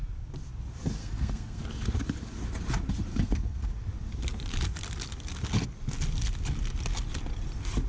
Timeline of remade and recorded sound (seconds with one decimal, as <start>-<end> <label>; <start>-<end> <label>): 0.0-1.0 recorded; 1.0-1.6 remade; 1.6-3.1 recorded; 3.1-3.7 remade; 3.7-7.9 recorded